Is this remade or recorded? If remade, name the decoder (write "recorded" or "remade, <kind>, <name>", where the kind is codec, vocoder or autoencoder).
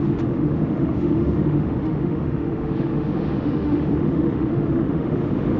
remade, autoencoder, DAC-VAE